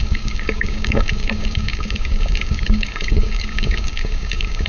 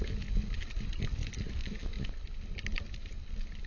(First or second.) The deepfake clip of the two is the first